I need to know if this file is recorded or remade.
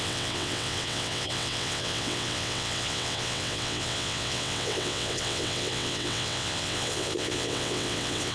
remade